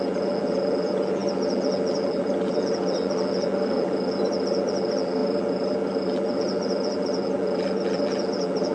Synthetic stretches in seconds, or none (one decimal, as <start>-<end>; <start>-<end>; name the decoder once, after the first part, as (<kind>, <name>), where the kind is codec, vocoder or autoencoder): 0.0-8.7 (vocoder, BigVGAN v2)